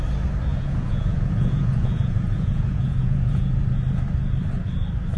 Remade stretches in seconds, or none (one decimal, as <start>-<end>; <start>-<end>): 0.5-3.6